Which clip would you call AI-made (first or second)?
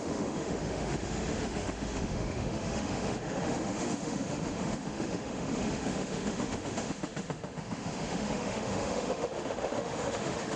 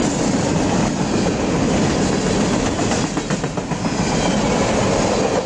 first